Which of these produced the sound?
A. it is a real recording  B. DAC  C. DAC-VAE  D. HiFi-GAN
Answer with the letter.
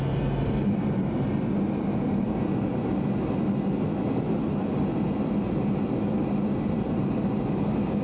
A